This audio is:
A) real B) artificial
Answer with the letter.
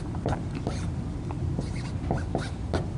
A